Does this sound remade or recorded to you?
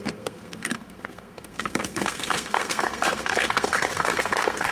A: remade